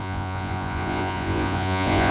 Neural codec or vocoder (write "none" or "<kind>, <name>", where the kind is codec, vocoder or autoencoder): vocoder, Vocos